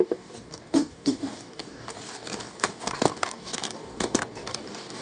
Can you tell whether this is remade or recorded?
remade